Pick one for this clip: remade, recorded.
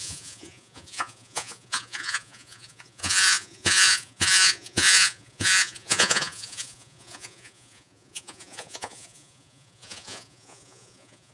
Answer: remade